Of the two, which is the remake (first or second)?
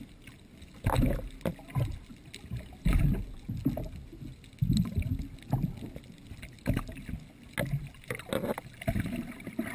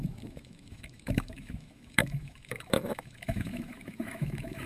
second